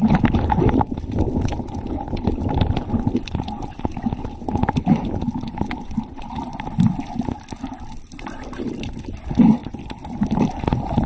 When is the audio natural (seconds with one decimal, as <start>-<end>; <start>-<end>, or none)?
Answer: 0.0-11.1